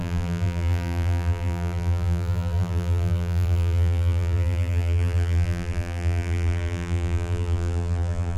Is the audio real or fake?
fake